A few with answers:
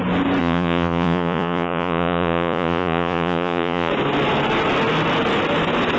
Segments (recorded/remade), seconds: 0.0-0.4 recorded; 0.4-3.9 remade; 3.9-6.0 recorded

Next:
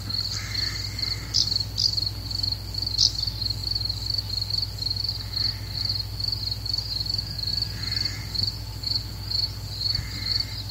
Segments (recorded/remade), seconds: 0.0-10.7 recorded

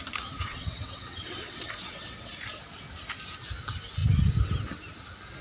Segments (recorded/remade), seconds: 0.0-0.4 recorded; 0.4-2.3 remade; 2.3-5.4 recorded